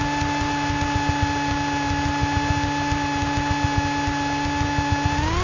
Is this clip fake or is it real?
real